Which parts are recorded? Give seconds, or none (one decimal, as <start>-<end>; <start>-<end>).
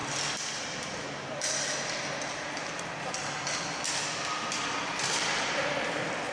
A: 0.0-6.3